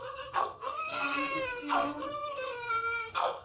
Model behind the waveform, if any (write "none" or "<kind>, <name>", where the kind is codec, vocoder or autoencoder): codec, SNAC